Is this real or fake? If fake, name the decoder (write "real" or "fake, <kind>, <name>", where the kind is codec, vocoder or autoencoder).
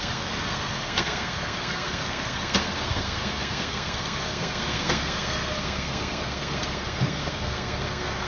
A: fake, codec, SNAC